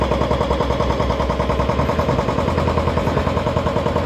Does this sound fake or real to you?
real